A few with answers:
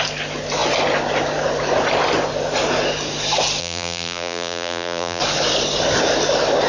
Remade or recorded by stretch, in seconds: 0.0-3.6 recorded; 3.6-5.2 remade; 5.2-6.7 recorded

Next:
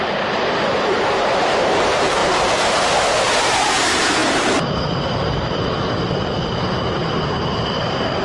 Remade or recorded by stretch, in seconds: 0.0-8.2 remade

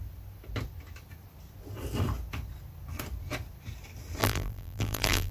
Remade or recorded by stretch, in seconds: 0.0-4.2 recorded; 4.2-5.3 remade

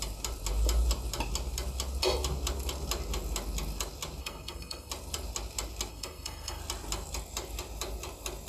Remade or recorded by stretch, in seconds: 0.0-4.2 recorded; 4.2-4.9 remade; 4.9-5.9 recorded; 5.9-6.6 remade; 6.6-8.5 recorded

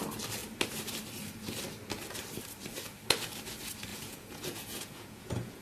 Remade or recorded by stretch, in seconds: 0.0-3.9 recorded; 3.9-5.6 remade